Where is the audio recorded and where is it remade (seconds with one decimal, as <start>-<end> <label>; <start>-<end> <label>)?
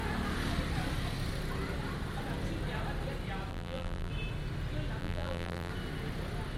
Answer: 0.0-3.5 recorded; 3.5-4.1 remade; 4.1-5.0 recorded; 5.0-5.7 remade; 5.7-6.6 recorded